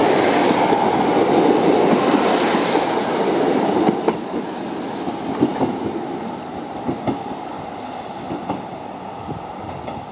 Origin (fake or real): real